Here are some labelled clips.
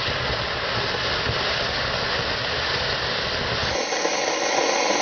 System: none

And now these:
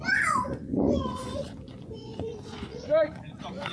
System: vocoder, Vocos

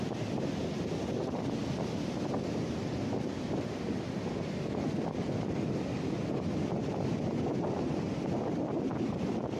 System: none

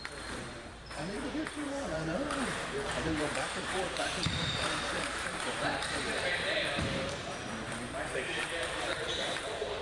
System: vocoder, BigVGAN v2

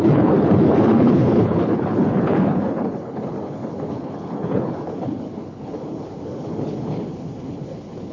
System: codec, HILCodec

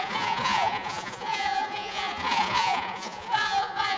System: vocoder, Vocos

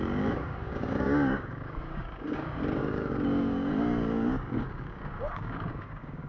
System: codec, DAC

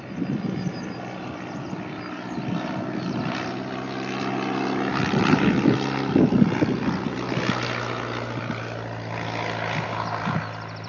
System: none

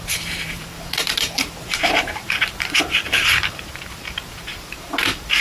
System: vocoder, BigVGAN v2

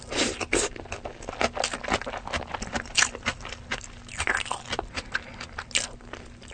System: none